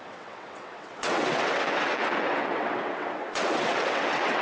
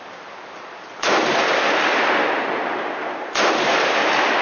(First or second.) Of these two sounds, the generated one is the first